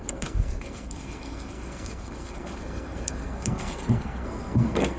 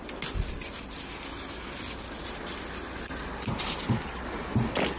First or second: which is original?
second